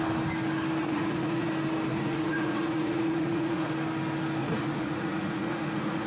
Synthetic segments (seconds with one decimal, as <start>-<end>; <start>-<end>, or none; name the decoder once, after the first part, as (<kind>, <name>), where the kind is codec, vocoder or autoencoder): 0.8-1.5 (vocoder, Vocos); 1.9-3.7; 4.4-6.1